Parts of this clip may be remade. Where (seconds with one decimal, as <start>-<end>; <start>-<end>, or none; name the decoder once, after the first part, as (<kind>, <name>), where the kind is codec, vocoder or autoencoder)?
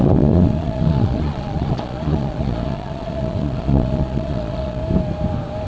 0.0-4.8 (vocoder, Vocos)